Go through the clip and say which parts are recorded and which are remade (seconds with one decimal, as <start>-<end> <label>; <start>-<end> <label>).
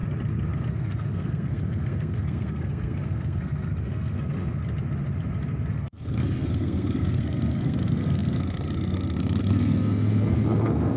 0.0-0.7 recorded; 0.7-4.6 remade; 4.6-5.7 recorded; 5.7-11.0 remade